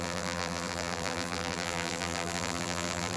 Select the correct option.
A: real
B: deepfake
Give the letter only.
B